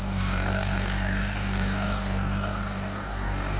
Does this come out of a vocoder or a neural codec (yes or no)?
yes